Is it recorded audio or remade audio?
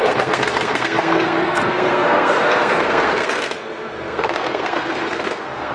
remade